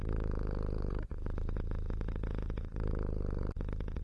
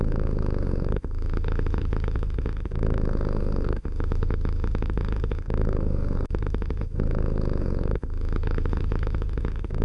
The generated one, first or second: second